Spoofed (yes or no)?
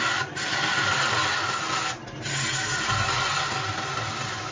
no